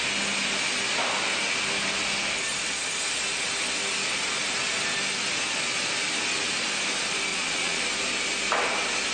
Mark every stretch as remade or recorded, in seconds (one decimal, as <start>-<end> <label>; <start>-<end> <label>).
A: 0.0-7.3 recorded; 7.3-7.8 remade; 7.8-9.1 recorded